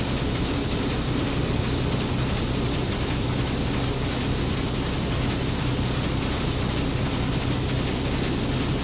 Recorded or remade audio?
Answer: recorded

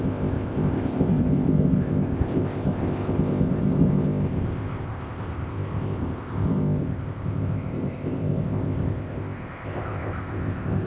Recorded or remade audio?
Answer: remade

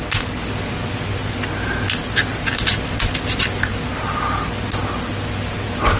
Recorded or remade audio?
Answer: recorded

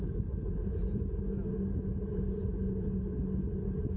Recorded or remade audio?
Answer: recorded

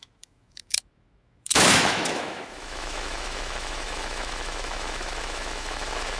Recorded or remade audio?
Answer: remade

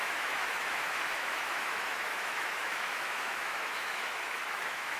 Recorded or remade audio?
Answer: remade